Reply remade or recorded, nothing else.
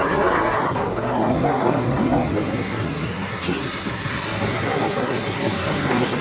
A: remade